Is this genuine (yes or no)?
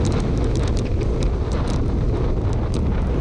yes